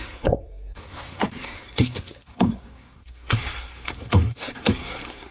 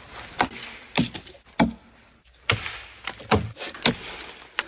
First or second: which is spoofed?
first